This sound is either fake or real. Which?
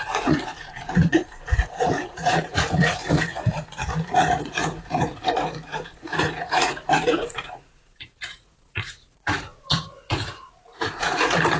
fake